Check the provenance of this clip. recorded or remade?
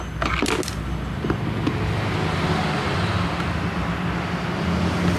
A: recorded